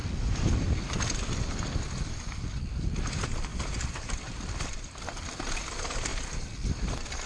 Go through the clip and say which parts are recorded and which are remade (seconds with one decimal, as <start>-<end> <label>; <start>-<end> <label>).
0.0-2.2 recorded; 2.2-7.3 remade